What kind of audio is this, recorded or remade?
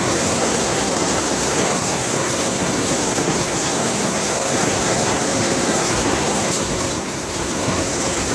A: remade